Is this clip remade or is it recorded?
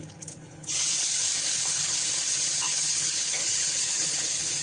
remade